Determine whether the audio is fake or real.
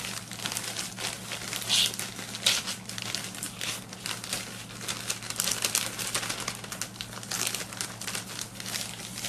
real